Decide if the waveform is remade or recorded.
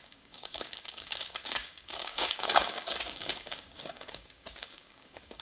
remade